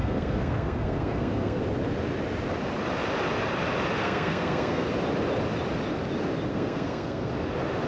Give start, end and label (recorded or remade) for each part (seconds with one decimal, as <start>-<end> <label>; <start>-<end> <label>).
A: 0.0-1.6 remade; 1.6-4.0 recorded; 4.0-4.9 remade; 4.9-6.5 recorded; 6.5-7.3 remade; 7.3-7.9 recorded